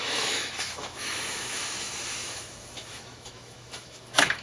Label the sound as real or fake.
fake